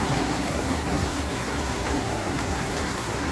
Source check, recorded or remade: remade